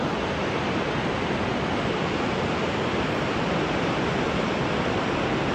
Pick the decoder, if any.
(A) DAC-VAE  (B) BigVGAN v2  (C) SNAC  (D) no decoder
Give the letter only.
D